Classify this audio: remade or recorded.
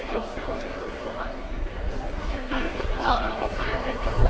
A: remade